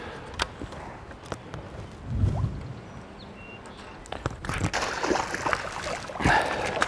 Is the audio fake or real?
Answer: real